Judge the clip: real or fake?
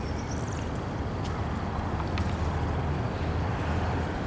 real